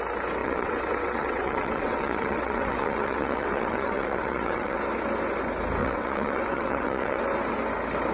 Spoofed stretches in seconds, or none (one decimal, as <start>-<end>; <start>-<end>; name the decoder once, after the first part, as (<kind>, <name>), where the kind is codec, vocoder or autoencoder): 0.4-4.8 (vocoder, WaveNeXt); 5.8-7.2